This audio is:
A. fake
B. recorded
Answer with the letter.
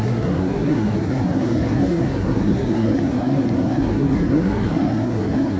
A